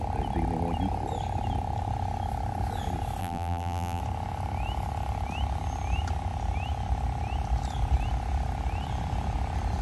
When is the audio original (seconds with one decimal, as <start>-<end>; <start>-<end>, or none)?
0.0-3.2; 4.0-9.8